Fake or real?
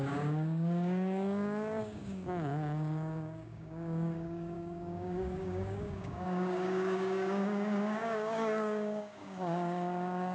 fake